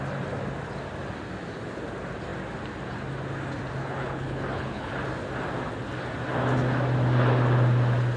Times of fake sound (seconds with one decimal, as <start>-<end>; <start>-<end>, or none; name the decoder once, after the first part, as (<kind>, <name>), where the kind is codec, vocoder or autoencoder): 3.8-4.9 (codec, HILCodec)